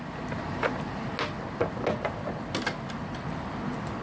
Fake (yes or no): no